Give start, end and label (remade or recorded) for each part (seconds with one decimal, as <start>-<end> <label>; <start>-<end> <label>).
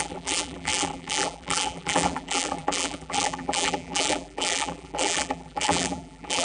0.0-6.4 remade